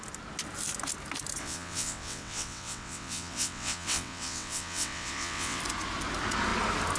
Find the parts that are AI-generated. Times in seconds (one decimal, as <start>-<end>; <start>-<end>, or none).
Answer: 1.4-5.6